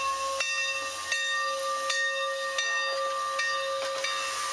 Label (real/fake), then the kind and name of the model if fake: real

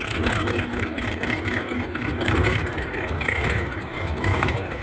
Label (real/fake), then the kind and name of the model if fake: fake, codec, DAC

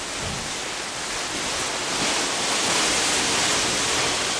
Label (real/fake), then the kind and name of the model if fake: real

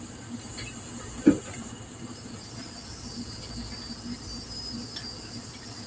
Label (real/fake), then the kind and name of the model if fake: real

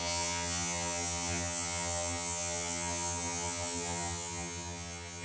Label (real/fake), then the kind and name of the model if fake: fake, vocoder, HiFi-GAN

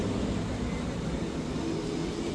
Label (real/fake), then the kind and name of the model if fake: real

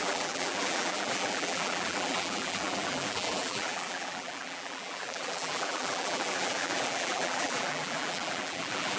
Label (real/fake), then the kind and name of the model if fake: fake, vocoder, BigVGAN v2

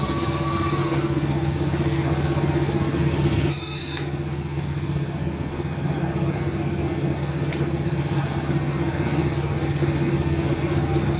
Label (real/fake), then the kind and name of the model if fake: fake, codec, SNAC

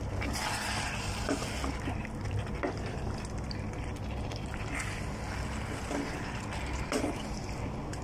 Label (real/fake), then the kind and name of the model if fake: real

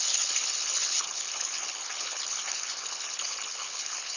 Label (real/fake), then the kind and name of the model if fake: fake, codec, HILCodec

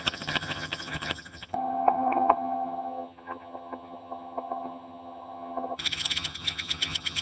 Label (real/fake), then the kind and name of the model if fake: fake, vocoder, HiFi-GAN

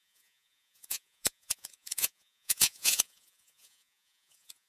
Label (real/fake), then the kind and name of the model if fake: fake, vocoder, Vocos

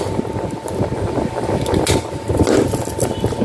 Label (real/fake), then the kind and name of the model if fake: real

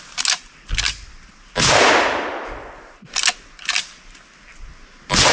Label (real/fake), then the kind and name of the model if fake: real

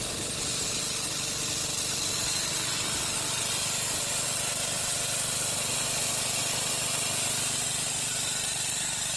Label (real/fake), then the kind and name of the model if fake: real